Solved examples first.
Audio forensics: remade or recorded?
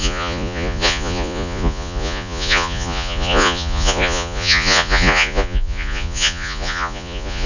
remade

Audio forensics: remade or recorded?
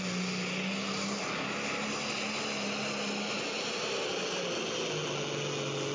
recorded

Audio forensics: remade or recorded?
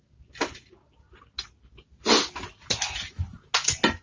recorded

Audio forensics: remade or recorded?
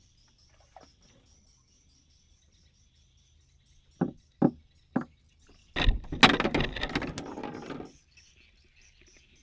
recorded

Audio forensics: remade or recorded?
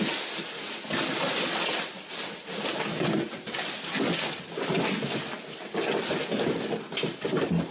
recorded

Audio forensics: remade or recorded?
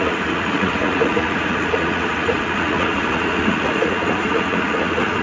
remade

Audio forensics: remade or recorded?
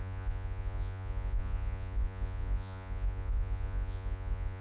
remade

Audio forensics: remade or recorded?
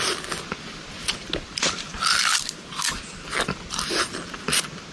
recorded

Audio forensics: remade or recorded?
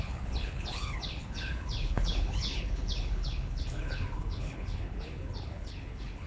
remade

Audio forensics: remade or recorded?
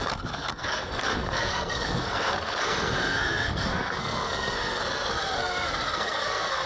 remade